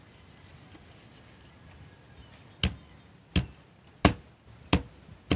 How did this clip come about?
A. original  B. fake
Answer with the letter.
A